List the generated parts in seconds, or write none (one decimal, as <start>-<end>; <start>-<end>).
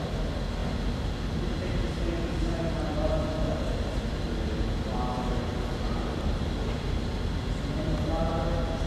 none